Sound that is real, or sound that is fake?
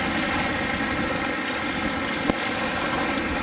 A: real